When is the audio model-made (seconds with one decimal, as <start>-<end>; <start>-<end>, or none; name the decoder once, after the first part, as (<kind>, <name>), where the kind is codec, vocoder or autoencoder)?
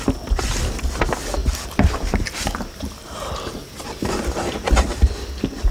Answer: 1.4-4.8 (vocoder, BigVGAN v2)